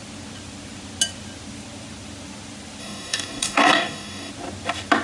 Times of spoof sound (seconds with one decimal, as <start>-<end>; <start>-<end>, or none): 2.8-4.3